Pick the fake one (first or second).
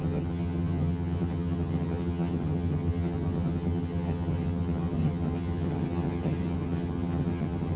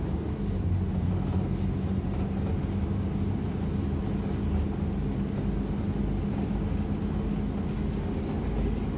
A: first